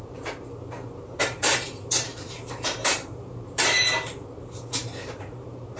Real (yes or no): no